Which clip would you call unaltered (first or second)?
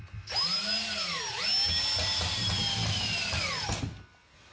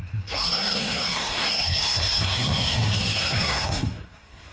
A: first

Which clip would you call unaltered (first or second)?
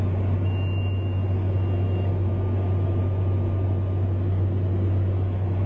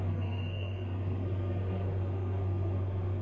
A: first